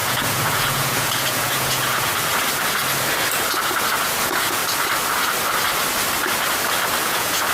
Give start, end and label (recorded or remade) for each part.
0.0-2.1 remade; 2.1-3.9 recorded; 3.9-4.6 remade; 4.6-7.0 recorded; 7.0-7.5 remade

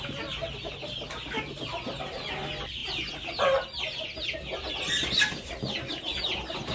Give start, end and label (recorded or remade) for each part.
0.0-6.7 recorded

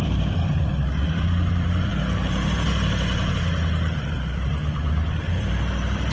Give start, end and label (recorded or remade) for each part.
0.0-1.9 remade; 1.9-3.3 recorded; 3.3-6.1 remade